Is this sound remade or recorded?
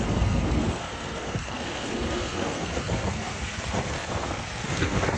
remade